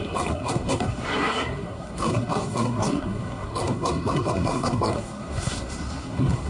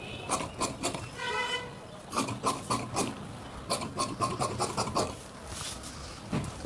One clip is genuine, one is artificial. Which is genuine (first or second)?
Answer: second